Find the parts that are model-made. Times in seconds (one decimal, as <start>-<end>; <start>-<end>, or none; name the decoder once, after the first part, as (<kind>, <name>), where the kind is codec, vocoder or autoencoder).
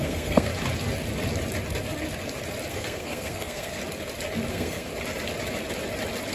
0.0-0.5 (codec, SNAC); 2.7-3.8; 4.5-4.9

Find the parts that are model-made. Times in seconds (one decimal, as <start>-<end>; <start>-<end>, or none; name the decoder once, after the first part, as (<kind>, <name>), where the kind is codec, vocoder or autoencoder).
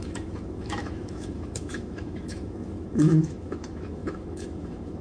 0.0-5.0 (autoencoder, DAC-VAE)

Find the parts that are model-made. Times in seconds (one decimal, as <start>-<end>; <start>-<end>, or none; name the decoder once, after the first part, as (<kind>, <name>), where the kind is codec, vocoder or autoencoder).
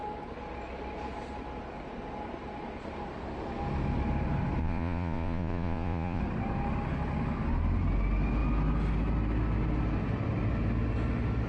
4.6-6.2 (vocoder, Vocos)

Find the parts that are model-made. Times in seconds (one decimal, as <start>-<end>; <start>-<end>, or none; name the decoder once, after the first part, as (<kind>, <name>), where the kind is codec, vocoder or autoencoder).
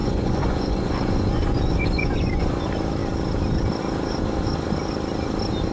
0.0-2.6 (vocoder, Vocos)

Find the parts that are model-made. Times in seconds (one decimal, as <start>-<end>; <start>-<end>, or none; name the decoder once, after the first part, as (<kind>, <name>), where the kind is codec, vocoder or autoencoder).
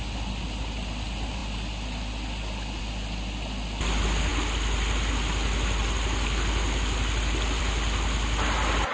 none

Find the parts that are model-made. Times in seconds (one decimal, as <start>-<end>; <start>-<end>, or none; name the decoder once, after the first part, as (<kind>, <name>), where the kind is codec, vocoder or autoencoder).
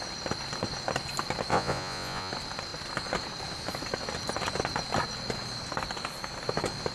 1.5-2.3 (vocoder, Vocos)